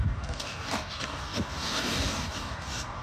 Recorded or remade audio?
remade